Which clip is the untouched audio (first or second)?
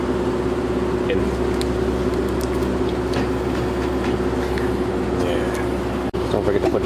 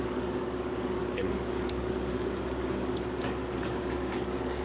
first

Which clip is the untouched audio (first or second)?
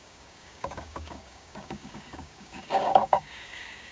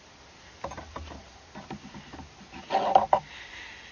second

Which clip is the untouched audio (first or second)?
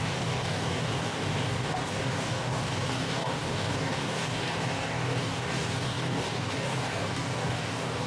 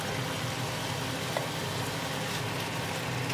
second